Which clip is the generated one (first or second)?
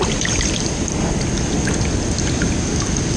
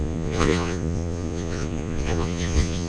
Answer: second